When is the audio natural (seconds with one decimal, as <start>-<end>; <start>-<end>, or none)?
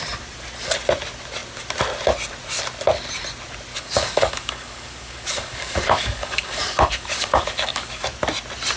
0.0-3.7; 8.0-8.8